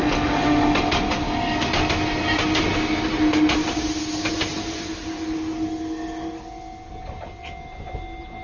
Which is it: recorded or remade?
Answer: recorded